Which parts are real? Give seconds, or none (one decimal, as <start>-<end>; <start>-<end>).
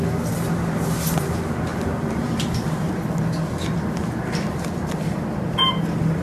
0.0-1.7; 4.0-6.2